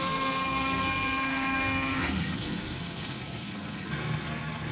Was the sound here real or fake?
fake